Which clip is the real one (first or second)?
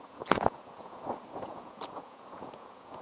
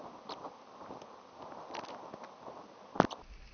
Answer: second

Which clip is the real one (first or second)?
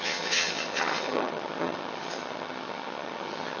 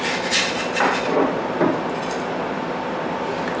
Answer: second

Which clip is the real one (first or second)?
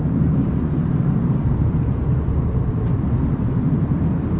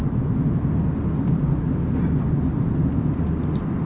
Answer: second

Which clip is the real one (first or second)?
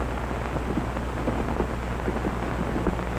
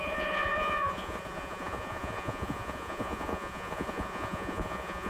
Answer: first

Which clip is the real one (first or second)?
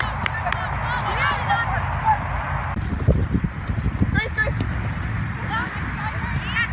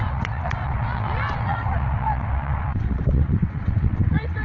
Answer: first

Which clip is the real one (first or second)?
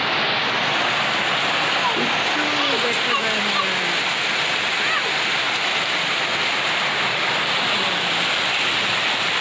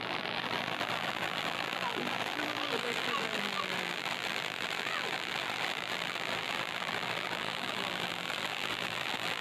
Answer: first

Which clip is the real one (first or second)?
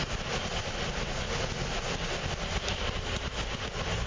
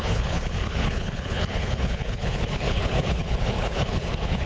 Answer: first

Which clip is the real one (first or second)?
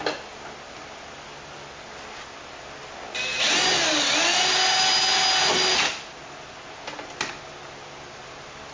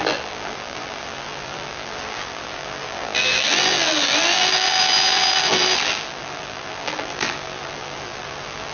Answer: first